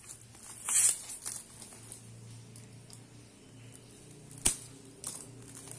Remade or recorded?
recorded